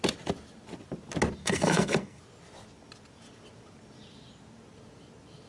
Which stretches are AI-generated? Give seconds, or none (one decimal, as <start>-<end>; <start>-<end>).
1.4-2.2